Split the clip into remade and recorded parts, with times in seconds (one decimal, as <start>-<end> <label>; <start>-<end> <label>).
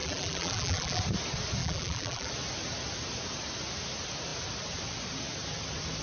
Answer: 0.0-1.0 remade; 1.0-1.6 recorded; 1.6-2.3 remade; 2.3-6.0 recorded